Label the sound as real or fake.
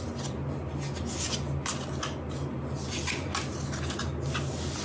real